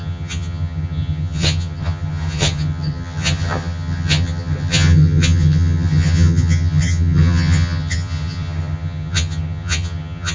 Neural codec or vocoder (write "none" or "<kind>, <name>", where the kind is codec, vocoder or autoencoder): vocoder, HiFi-GAN